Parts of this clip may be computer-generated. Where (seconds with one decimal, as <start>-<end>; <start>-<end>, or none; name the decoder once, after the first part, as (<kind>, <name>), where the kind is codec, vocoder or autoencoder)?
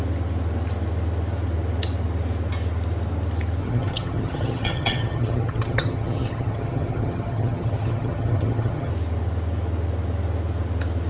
3.6-8.9 (vocoder, HiFi-GAN)